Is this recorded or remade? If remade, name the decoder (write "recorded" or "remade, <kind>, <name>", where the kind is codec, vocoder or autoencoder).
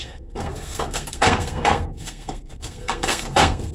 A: remade, codec, SNAC